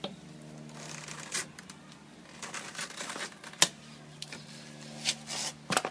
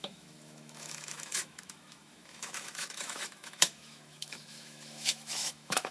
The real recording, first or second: first